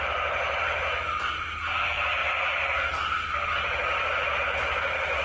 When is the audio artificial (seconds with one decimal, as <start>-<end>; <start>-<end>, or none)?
0.0-2.2; 4.3-5.2